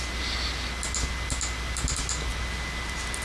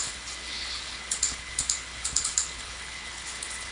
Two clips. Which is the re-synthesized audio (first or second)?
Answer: second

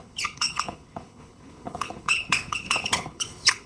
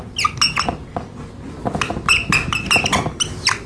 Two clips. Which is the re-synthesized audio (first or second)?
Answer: first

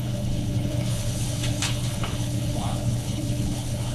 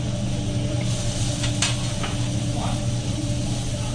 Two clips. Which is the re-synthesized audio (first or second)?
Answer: first